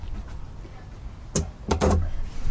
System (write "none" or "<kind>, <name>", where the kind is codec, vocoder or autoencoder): none